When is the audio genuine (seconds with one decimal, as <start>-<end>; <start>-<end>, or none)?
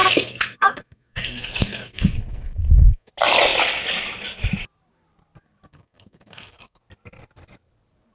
3.1-5.7; 6.8-8.1